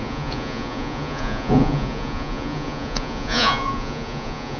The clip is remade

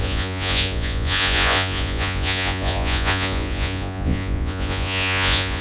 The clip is remade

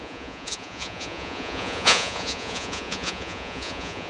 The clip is remade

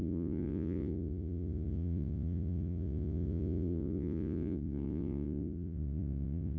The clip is remade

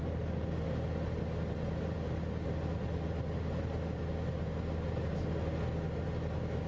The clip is recorded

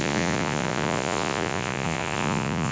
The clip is remade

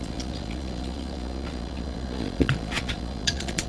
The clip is remade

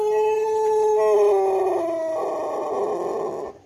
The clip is recorded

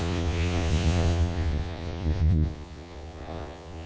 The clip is remade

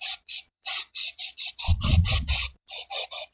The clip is remade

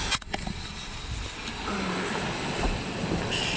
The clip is recorded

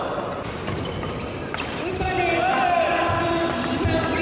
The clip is recorded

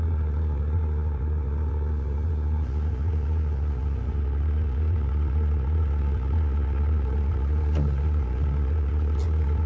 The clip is remade